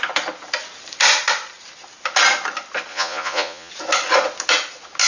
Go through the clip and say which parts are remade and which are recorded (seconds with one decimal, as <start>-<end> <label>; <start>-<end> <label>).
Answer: 0.0-2.9 recorded; 2.9-3.7 remade; 3.7-5.1 recorded